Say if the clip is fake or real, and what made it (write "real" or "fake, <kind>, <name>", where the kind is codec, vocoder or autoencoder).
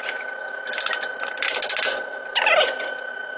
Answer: real